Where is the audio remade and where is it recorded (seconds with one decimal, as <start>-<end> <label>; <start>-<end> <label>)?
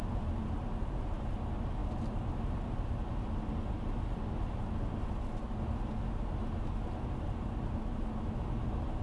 0.0-9.0 recorded